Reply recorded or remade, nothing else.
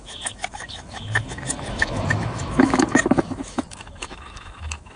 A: remade